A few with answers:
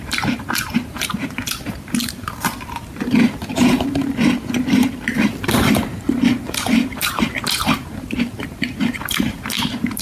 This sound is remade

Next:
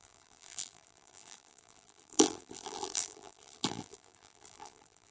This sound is remade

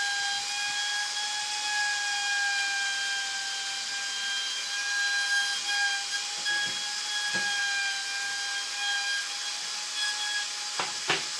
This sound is recorded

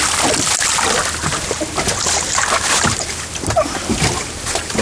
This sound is recorded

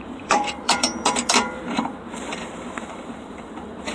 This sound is remade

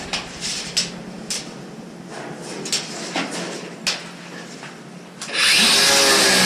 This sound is recorded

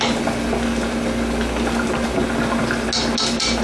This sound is recorded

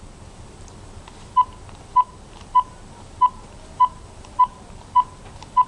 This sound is remade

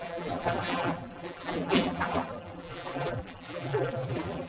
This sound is remade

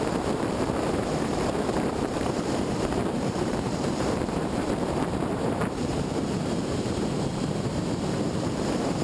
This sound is remade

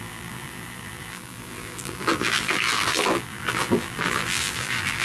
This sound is remade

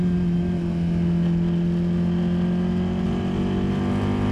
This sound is recorded